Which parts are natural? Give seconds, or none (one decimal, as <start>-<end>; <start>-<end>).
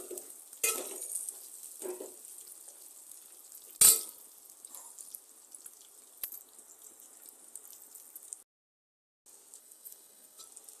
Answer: 0.0-9.6; 10.4-10.8